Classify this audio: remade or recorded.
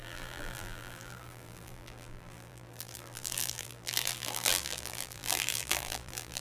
remade